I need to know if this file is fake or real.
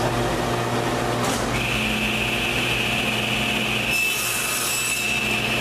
real